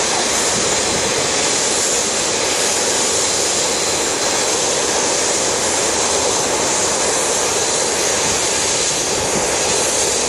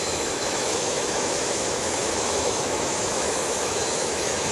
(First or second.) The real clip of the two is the first